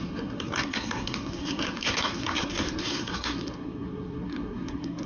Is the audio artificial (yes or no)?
yes